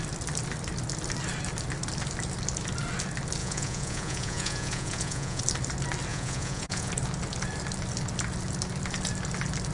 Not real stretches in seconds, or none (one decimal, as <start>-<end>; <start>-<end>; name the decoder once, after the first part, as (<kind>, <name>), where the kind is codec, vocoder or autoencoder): 3.4-5.4 (vocoder, Vocos); 6.1-6.9